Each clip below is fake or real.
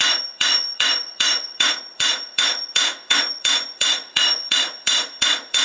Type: fake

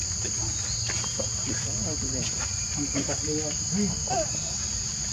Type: real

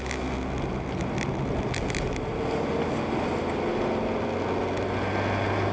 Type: real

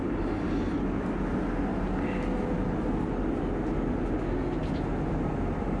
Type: real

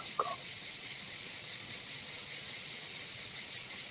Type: fake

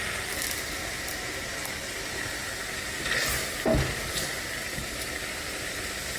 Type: real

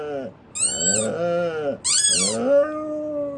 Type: real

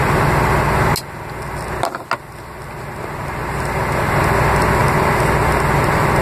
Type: real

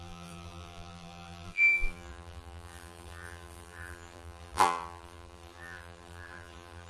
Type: fake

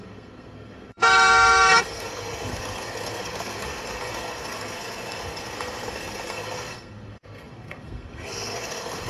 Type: fake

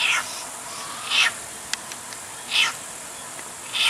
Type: real